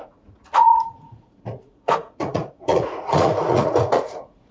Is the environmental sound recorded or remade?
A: remade